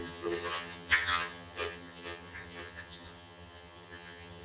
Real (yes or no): no